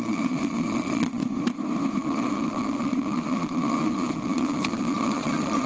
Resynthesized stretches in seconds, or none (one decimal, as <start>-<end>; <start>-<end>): 0.0-1.2; 2.0-5.7